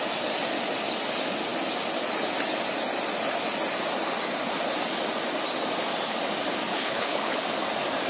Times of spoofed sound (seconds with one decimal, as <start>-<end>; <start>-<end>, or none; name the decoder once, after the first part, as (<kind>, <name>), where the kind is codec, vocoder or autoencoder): 6.7-7.4 (codec, HILCodec)

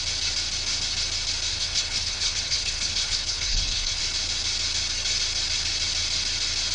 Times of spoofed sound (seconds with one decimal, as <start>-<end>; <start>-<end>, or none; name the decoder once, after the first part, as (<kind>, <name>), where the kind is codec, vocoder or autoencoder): 1.5-4.0 (codec, HILCodec)

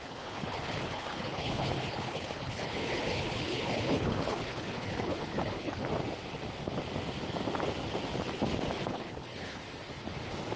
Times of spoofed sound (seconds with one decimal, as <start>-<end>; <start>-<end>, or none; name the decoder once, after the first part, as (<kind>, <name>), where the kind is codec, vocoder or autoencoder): 0.0-5.8 (codec, HILCodec); 8.9-9.6

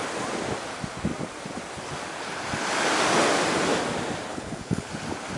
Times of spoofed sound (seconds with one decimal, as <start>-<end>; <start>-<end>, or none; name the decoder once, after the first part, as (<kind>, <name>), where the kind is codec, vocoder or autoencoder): 4.3-4.9 (codec, HILCodec)

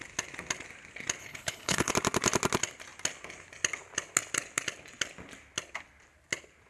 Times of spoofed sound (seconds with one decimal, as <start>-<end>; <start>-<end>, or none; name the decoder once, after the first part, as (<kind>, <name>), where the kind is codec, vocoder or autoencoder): 1.2-1.9 (codec, HILCodec)